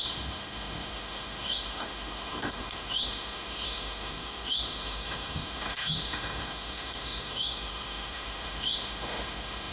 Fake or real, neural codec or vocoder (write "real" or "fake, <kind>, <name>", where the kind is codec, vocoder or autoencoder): fake, autoencoder, DAC-VAE